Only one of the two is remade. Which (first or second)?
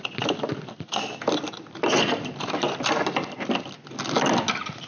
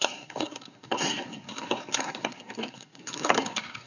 second